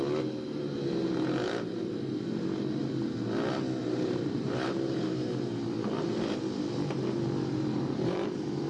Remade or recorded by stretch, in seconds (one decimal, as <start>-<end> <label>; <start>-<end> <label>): 0.0-3.8 recorded; 3.8-8.7 remade